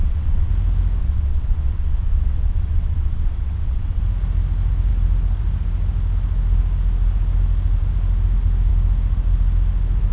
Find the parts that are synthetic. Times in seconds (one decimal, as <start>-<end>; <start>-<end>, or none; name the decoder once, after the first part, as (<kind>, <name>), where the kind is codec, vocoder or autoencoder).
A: 0.0-0.5 (vocoder, WaveNeXt); 1.0-4.0